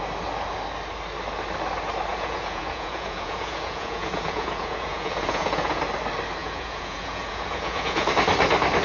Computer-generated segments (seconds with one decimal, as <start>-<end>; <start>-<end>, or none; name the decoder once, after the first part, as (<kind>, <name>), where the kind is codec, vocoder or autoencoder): 2.1-5.8 (vocoder, Vocos); 6.4-8.1